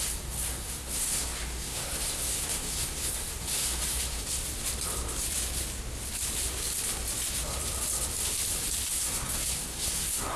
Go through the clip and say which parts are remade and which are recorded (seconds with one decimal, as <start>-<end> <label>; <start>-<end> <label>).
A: 0.0-4.4 remade; 4.4-8.9 recorded; 8.9-10.4 remade